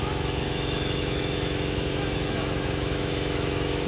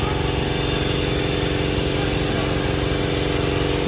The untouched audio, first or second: second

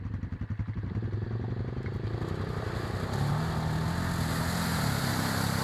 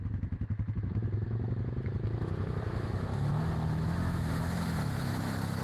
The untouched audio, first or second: first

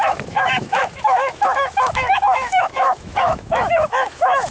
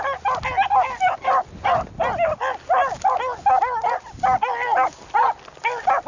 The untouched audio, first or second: second